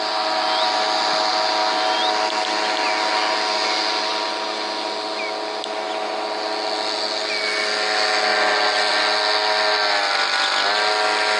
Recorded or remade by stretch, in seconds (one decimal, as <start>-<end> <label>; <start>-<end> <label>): 0.0-11.4 recorded